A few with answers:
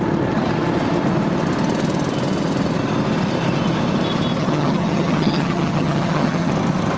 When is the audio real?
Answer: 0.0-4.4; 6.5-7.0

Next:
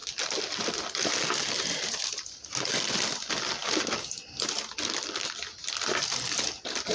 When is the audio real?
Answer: 3.6-4.7